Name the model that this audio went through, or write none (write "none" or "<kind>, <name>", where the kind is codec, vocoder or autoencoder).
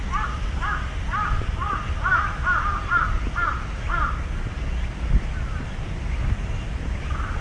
none